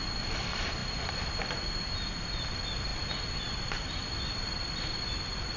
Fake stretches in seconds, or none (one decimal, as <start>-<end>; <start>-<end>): none